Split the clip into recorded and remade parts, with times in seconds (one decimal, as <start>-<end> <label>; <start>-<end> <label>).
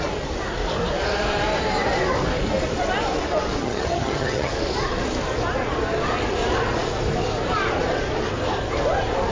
0.0-3.6 recorded; 3.6-4.5 remade; 4.5-9.3 recorded